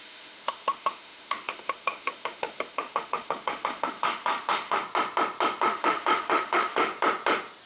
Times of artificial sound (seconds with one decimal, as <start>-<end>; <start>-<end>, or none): 0.0-4.8; 5.6-6.9